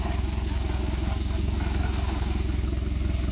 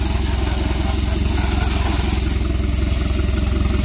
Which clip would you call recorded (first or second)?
second